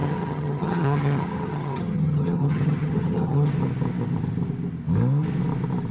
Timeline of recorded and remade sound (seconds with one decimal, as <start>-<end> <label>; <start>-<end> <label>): 0.0-3.5 remade; 3.5-5.9 recorded